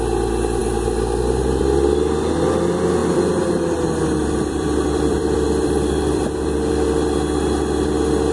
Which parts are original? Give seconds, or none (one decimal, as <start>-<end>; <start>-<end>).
0.0-3.0; 6.7-8.3